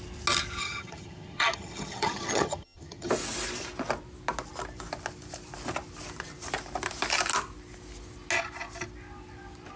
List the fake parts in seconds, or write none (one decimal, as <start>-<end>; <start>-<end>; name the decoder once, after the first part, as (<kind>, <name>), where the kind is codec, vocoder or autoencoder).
0.6-3.1 (vocoder, HiFi-GAN)